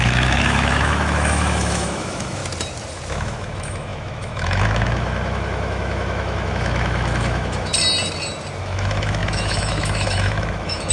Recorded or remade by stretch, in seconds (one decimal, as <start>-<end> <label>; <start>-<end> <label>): 0.0-2.4 remade; 2.4-3.1 recorded; 3.1-7.7 remade; 7.7-8.6 recorded; 8.6-10.9 remade